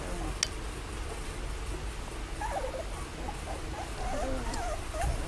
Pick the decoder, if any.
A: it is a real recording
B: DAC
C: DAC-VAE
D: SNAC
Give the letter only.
A